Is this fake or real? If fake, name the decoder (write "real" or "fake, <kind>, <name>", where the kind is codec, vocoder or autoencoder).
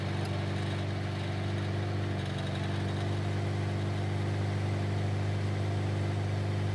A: real